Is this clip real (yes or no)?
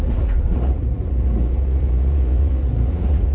no